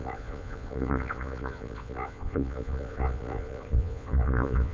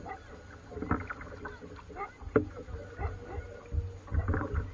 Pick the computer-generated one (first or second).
first